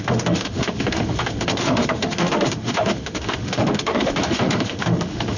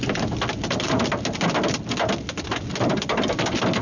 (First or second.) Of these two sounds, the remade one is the first